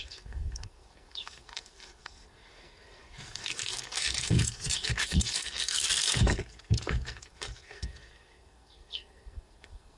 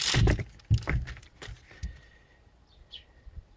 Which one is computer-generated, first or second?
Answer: first